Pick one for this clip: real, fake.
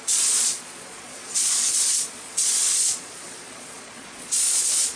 fake